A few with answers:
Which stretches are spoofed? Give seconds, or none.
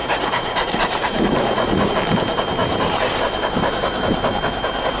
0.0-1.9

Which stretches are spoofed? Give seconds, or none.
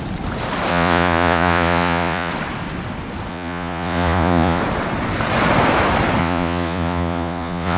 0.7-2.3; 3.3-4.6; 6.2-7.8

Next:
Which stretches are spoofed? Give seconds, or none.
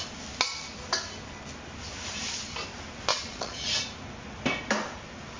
3.1-3.7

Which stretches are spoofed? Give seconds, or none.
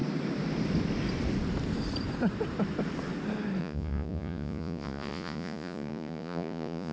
3.6-6.9